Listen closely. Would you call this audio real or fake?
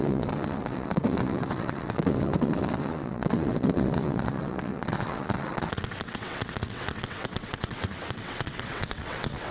fake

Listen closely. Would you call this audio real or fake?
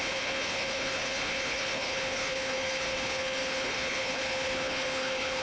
fake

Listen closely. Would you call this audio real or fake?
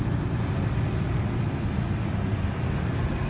real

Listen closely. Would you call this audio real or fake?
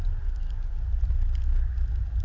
real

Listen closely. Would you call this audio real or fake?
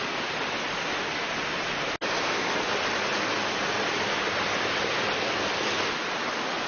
real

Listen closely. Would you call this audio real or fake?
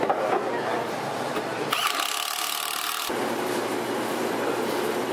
fake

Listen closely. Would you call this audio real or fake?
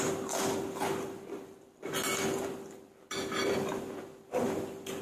real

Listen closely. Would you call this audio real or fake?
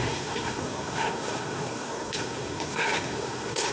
fake